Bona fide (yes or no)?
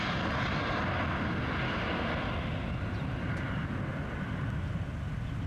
yes